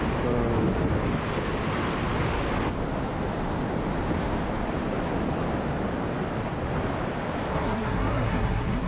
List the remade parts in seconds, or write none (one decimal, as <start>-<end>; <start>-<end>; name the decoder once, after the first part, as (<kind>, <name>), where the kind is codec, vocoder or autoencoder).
7.5-8.9 (codec, SNAC)

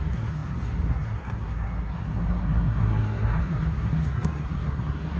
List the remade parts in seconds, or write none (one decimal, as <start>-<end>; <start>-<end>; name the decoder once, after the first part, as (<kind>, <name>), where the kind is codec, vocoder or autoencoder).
0.0-5.2 (codec, SNAC)

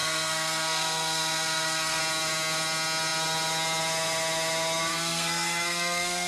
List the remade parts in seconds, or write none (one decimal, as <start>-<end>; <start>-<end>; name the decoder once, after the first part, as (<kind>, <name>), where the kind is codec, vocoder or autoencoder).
0.0-2.0 (codec, SNAC); 4.9-6.3

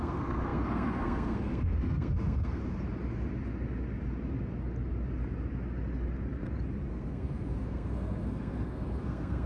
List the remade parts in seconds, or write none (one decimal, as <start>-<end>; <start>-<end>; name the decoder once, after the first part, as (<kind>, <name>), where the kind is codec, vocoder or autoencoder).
0.0-2.6 (codec, SNAC); 6.9-9.5

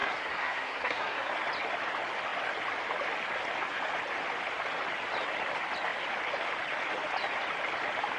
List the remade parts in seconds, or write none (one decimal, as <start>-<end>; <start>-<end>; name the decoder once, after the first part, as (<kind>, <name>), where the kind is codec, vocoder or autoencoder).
0.0-1.3 (codec, SNAC)